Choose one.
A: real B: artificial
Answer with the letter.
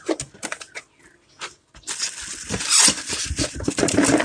A